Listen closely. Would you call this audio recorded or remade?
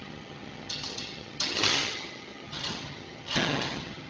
remade